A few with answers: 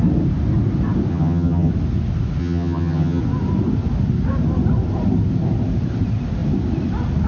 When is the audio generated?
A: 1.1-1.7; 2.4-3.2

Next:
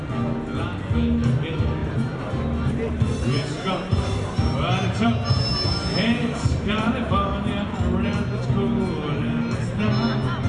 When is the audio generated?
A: 1.8-7.1

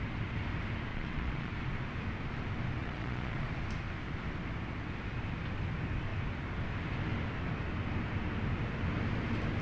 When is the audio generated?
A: 0.9-1.5; 2.8-3.5

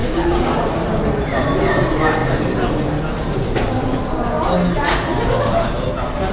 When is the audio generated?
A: 0.0-0.6

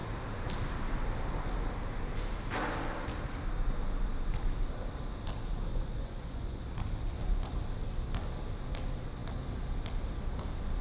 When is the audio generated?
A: 5.7-6.6

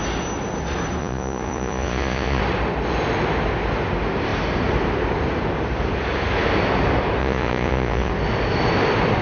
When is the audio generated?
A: 1.0-2.4; 7.2-8.1

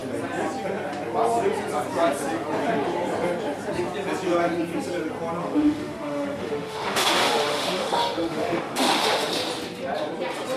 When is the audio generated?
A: 5.4-9.3